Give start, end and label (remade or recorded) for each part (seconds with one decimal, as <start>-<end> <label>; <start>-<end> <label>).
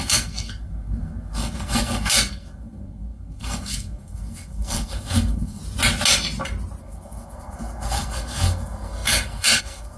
0.0-5.6 remade; 5.6-6.8 recorded; 6.8-10.0 remade